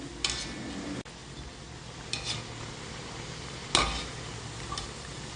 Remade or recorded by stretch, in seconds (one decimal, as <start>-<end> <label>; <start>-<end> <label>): 0.0-5.4 recorded